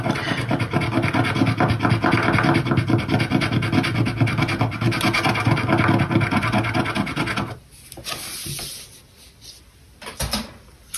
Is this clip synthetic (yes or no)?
no